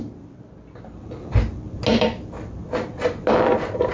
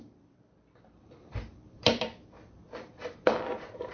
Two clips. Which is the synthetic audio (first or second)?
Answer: second